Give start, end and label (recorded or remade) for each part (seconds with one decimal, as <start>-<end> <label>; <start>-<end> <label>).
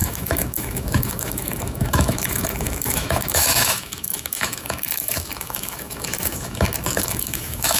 0.0-7.8 remade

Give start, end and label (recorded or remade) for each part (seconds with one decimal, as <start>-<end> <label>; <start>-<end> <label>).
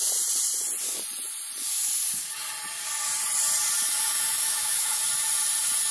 0.0-4.4 recorded; 4.4-5.0 remade; 5.0-5.9 recorded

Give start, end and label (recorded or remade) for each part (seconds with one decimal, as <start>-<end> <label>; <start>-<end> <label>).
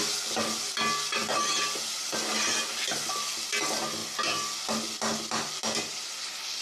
0.0-6.6 recorded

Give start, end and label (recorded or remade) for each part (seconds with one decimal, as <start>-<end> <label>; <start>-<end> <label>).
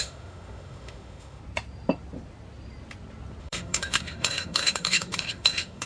0.0-1.4 remade; 1.4-3.4 recorded; 3.4-5.9 remade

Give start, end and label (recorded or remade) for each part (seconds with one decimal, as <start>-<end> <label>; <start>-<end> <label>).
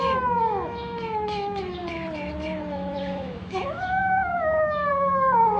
0.0-1.8 remade; 1.8-2.7 recorded; 2.7-5.6 remade